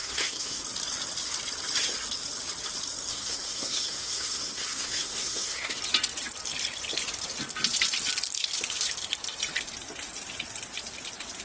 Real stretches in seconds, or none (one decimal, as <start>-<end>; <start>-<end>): 0.6-3.1; 5.8-11.4